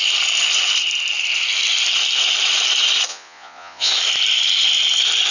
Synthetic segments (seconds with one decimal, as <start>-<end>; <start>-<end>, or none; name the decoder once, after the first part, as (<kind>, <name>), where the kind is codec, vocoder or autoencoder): 3.1-3.9 (vocoder, Vocos)